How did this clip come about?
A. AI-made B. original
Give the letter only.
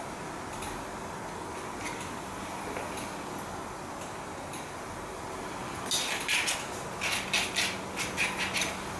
B